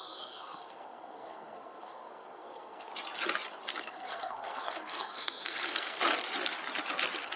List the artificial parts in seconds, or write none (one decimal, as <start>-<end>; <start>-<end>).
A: 0.0-2.9; 3.8-6.0